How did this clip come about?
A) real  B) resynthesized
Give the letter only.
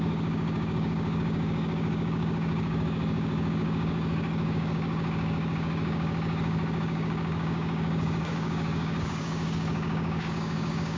B